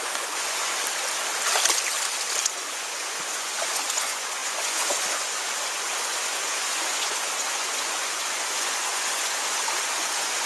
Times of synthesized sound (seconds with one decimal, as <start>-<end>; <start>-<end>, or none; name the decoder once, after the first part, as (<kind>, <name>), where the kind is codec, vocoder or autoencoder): 0.0-0.8 (vocoder, Vocos); 2.4-10.5